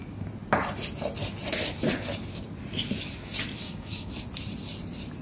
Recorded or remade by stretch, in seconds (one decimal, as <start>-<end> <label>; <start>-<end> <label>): 0.0-3.6 recorded; 3.6-4.1 remade; 4.1-5.2 recorded